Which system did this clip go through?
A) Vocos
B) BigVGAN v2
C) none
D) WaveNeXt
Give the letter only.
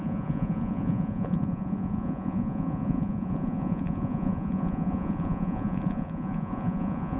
A